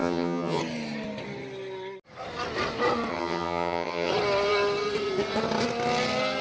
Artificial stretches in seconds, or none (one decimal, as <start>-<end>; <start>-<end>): 0.0-0.6; 3.1-4.1